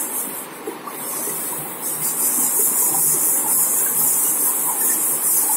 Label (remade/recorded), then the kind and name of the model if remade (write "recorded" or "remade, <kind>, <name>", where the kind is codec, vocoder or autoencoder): recorded